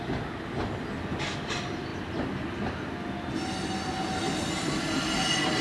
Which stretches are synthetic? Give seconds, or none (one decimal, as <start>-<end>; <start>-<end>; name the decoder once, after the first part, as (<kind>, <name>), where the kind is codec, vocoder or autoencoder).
none